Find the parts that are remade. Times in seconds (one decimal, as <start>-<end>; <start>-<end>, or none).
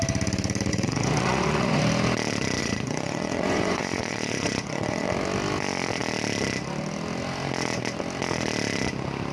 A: 0.7-1.8; 2.6-5.1